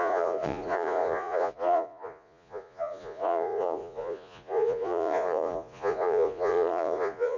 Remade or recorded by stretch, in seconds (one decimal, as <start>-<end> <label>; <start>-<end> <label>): 0.0-7.4 remade